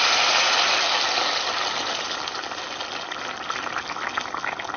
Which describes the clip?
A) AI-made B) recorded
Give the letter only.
B